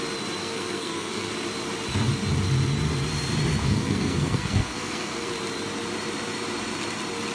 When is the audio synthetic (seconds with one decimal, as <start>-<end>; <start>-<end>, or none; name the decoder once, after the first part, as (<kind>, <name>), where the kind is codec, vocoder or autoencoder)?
0.4-1.3 (codec, SNAC); 3.6-5.3